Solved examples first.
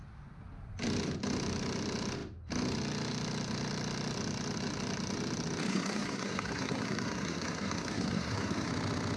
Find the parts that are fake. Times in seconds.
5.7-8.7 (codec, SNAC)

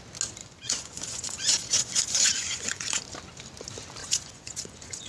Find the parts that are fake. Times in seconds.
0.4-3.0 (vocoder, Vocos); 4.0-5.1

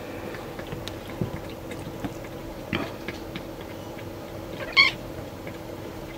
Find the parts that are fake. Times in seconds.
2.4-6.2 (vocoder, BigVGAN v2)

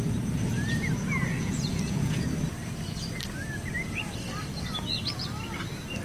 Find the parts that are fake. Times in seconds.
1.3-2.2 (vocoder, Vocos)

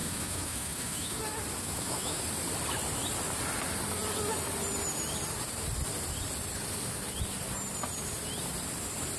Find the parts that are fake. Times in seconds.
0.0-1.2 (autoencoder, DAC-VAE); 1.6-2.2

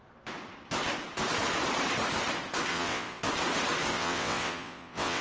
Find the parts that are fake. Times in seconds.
2.7-3.2 (vocoder, WaveNeXt); 3.9-5.2

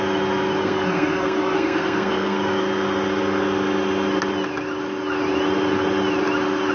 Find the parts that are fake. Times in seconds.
0.6-2.6 (codec, SNAC)

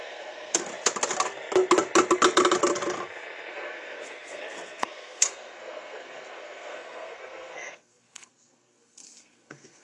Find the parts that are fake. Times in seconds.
0.0-0.7 (codec, SNAC); 3.5-9.8